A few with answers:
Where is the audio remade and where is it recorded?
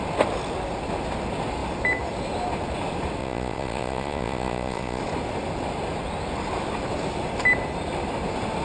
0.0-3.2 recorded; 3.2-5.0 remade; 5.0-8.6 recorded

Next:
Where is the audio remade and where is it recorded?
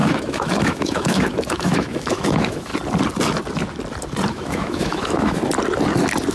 0.0-2.7 remade; 2.7-4.3 recorded; 4.3-5.4 remade; 5.4-6.3 recorded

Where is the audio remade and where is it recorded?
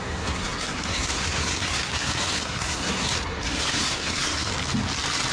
0.0-4.5 remade; 4.5-5.3 recorded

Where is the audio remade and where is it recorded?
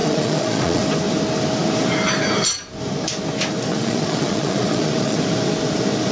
0.0-0.8 remade; 0.8-3.7 recorded; 3.7-5.2 remade; 5.2-6.1 recorded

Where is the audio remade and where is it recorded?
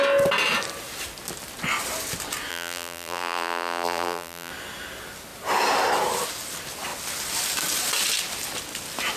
0.0-2.5 recorded; 2.5-4.5 remade; 4.5-9.2 recorded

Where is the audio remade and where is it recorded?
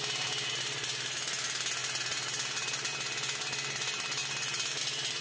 0.0-5.2 recorded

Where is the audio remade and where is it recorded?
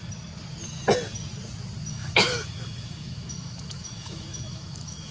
0.0-1.9 recorded; 1.9-5.1 remade